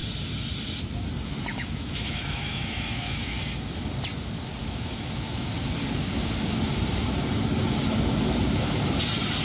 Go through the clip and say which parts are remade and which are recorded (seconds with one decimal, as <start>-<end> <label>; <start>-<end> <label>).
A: 0.0-1.5 recorded; 1.5-3.4 remade; 3.4-4.6 recorded; 4.6-5.5 remade; 5.5-9.4 recorded